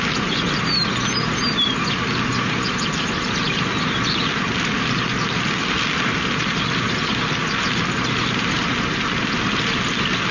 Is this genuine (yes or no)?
yes